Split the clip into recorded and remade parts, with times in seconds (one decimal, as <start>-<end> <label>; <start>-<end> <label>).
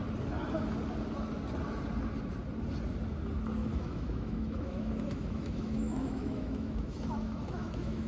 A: 0.0-3.6 recorded; 3.6-8.1 remade